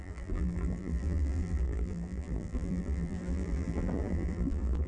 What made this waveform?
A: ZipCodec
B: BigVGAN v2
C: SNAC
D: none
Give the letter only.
B